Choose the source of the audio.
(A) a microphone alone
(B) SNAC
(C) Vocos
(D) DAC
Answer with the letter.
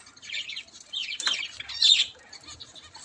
A